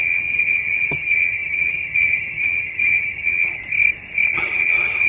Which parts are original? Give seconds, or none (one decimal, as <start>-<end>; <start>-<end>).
3.6-4.3